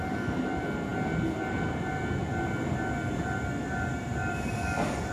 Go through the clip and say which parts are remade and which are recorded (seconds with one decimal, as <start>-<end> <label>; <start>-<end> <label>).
0.0-5.1 recorded